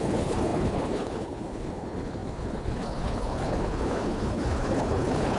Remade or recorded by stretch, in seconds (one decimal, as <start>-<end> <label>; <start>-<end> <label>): 0.0-5.4 remade